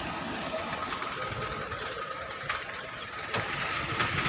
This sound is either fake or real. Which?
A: real